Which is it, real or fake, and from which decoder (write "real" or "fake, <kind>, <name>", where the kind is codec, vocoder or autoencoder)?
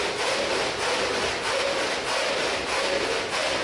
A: real